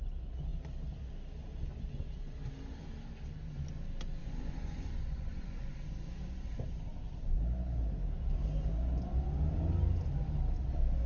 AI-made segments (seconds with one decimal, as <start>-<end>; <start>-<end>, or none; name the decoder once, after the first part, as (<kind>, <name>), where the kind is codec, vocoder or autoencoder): 4.2-5.7 (vocoder, Vocos)